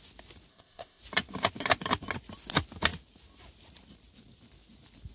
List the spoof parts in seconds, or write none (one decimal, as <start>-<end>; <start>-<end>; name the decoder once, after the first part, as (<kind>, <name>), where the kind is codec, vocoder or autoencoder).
0.5-1.0 (codec, ZipCodec)